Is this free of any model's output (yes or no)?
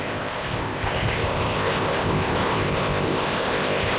no